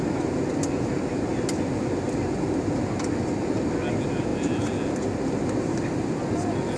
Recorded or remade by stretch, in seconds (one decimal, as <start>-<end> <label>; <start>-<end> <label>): 0.0-6.8 recorded